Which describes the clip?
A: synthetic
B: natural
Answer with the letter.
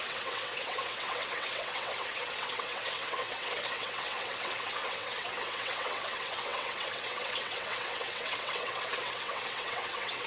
A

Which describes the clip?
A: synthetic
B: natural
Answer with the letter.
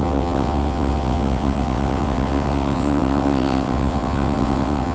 A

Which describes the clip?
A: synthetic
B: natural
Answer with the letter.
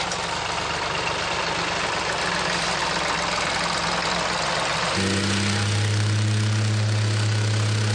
B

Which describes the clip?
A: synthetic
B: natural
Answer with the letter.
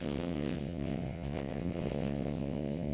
A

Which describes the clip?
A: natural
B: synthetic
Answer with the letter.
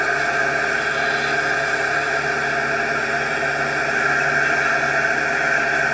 A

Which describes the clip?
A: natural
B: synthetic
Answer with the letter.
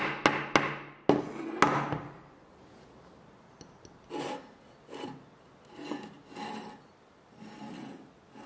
A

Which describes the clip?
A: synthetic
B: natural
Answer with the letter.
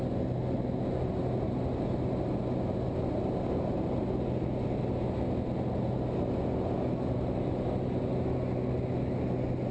B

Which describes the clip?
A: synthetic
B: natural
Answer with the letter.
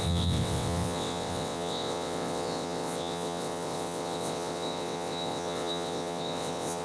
A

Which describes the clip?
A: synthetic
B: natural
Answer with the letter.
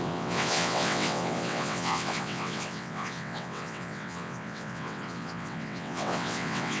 A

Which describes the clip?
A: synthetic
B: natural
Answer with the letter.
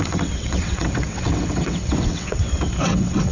A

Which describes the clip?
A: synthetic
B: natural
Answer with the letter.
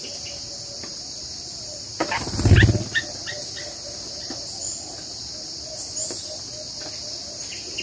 B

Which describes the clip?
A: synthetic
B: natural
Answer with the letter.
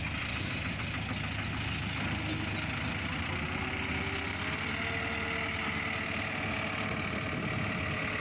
B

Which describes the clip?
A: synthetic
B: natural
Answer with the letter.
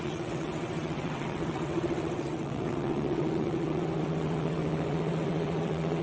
A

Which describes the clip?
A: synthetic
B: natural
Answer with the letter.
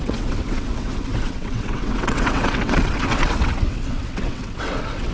A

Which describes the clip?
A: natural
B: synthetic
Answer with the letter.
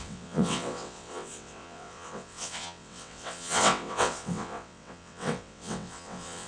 B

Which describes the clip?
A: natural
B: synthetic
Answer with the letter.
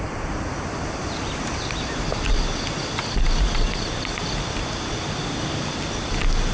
A